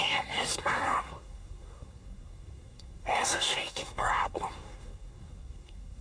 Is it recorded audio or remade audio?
remade